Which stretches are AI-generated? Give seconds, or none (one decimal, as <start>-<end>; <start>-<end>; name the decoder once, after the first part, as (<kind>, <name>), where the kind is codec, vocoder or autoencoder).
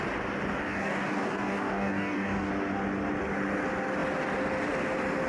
0.6-2.5 (codec, DAC)